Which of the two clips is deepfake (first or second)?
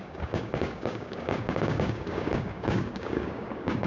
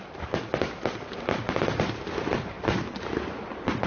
first